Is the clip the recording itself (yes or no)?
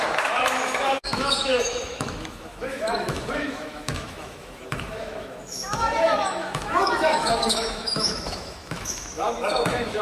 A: no